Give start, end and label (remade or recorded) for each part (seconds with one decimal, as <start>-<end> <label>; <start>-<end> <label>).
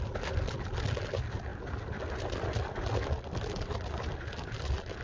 0.0-5.0 recorded